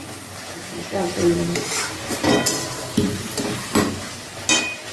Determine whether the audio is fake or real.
real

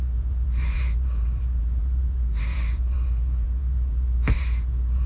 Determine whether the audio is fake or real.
fake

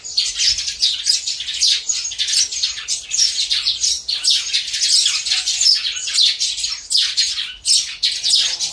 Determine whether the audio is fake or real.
real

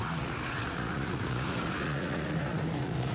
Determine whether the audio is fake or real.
fake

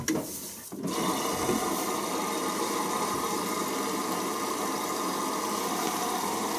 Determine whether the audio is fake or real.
real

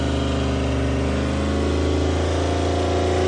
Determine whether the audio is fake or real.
real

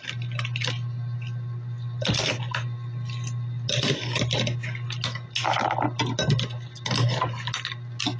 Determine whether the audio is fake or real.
real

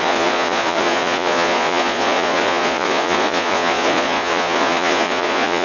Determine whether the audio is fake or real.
fake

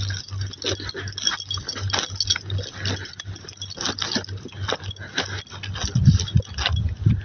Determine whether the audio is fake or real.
real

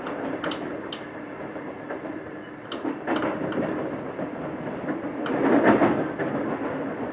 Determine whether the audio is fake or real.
real